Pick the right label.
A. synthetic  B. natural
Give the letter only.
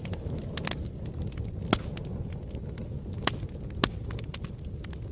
B